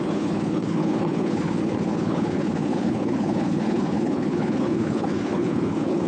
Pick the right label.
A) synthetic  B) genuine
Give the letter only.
A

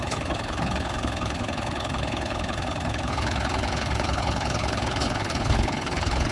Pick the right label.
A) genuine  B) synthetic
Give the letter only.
B